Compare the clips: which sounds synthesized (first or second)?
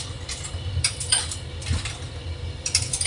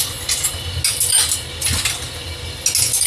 first